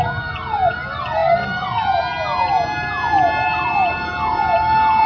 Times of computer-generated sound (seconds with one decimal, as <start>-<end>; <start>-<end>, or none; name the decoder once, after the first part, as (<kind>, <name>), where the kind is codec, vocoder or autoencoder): none